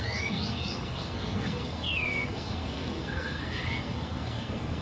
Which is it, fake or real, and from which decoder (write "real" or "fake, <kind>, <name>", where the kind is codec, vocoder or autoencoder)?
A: fake, codec, SNAC